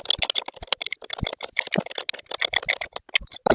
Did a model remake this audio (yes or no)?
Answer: no